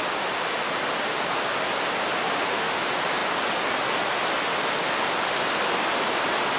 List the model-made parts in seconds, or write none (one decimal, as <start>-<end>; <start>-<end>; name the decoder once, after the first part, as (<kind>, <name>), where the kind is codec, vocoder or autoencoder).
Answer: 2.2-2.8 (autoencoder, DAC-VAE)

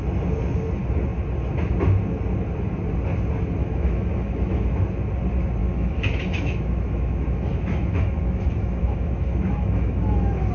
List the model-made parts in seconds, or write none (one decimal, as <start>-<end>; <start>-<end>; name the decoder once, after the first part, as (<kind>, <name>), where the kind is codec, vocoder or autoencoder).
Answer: 3.6-4.8 (autoencoder, DAC-VAE); 5.6-10.5

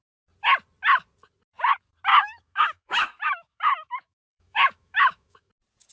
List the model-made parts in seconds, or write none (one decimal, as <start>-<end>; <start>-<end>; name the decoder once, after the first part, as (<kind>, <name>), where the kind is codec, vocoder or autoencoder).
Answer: 2.1-5.5 (autoencoder, DAC-VAE)

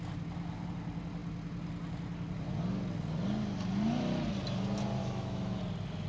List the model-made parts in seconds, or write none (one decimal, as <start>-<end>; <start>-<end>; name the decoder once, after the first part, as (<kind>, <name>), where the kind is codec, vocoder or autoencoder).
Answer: 5.0-5.6 (autoencoder, DAC-VAE)

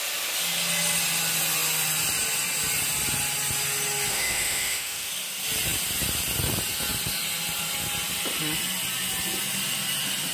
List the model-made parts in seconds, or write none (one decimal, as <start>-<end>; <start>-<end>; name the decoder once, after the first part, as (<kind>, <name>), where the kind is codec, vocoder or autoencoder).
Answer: 4.1-5.1 (autoencoder, DAC-VAE)

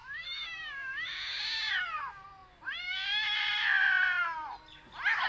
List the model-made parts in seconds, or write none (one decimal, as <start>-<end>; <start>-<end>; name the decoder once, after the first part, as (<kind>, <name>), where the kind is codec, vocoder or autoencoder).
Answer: 0.0-1.4 (autoencoder, DAC-VAE)